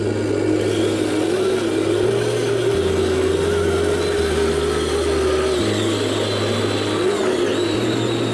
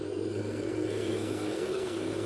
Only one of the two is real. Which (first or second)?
first